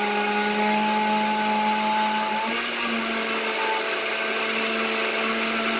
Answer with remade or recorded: recorded